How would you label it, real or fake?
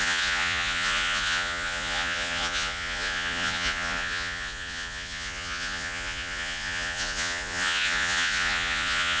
fake